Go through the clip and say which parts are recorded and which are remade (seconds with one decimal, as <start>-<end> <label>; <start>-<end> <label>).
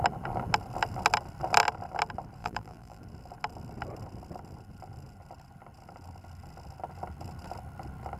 0.0-2.4 recorded; 2.4-3.0 remade; 3.0-8.2 recorded